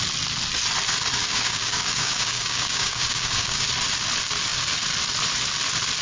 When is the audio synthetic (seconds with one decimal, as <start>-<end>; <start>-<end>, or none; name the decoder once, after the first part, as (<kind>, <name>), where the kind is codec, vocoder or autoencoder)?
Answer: 1.2-3.7 (codec, DAC)